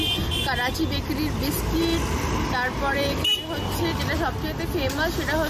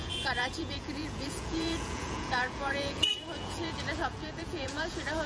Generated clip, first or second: second